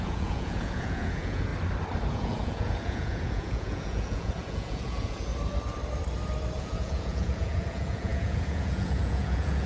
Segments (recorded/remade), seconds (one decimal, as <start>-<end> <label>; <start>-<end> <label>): 0.0-1.5 remade; 1.5-2.1 recorded; 2.1-5.3 remade; 5.3-6.6 recorded; 6.6-9.7 remade